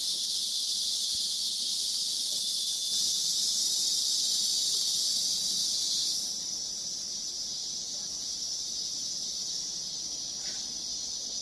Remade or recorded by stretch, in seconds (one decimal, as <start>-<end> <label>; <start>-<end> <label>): 0.0-1.5 recorded; 1.5-2.4 remade; 2.4-3.6 recorded; 3.6-5.0 remade; 5.0-7.6 recorded; 7.6-8.1 remade; 8.1-11.4 recorded